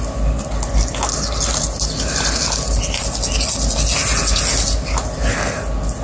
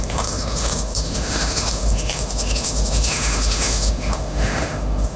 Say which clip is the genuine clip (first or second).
first